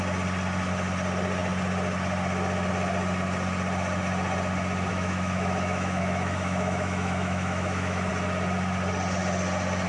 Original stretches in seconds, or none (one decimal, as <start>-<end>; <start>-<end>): 0.0-4.9; 8.1-9.9